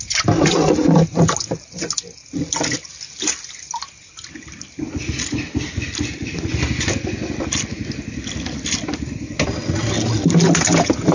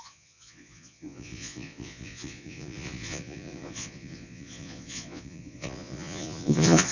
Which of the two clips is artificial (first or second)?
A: second